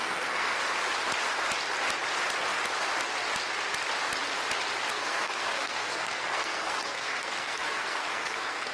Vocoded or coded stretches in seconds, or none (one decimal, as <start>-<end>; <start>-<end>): 0.0-0.6; 4.9-8.7